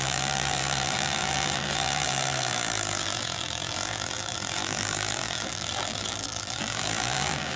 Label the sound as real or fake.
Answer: fake